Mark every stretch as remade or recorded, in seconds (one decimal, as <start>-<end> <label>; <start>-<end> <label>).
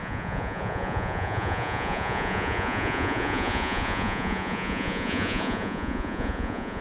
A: 0.0-6.8 remade